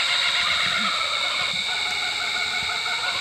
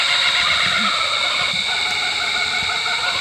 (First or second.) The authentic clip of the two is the first